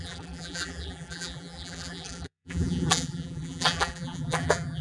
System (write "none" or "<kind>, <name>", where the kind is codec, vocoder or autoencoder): vocoder, BigVGAN v2